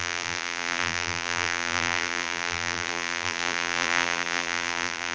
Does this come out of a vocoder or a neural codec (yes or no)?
yes